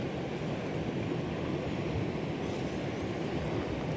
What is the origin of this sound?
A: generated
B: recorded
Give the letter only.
B